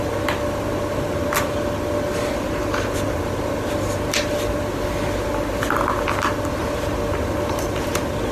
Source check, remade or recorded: recorded